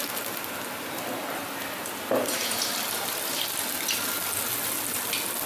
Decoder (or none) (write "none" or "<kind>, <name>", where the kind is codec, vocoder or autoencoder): none